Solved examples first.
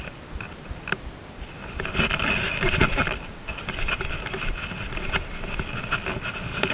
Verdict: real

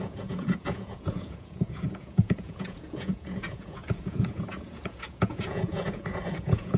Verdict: fake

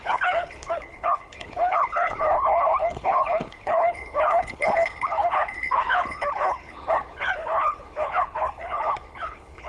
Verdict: fake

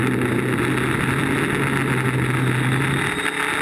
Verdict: real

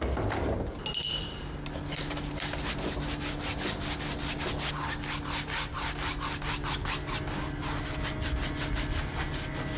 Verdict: real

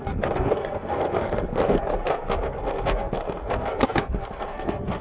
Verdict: fake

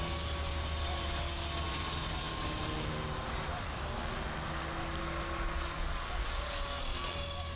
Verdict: real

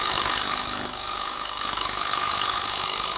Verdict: fake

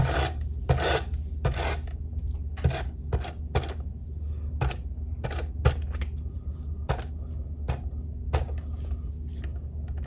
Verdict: real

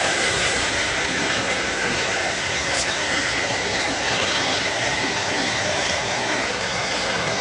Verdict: fake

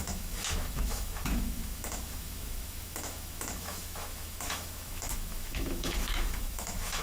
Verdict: fake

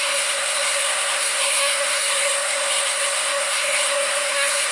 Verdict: fake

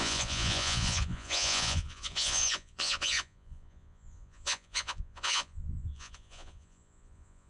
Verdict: fake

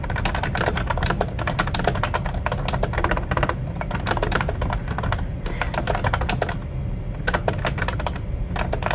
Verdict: real